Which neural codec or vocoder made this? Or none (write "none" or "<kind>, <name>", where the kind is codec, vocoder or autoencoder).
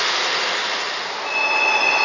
none